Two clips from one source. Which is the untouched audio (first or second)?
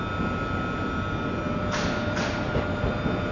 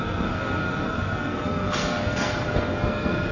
first